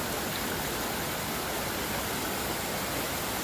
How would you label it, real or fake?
real